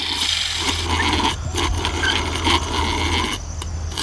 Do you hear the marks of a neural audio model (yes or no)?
no